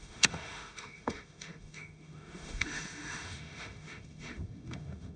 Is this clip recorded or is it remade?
remade